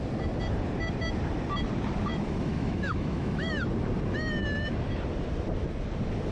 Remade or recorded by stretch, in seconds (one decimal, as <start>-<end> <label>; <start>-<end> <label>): 0.0-2.1 recorded; 2.1-3.5 remade; 3.5-6.3 recorded